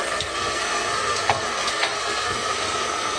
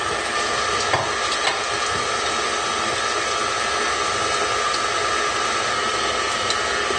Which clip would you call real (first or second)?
second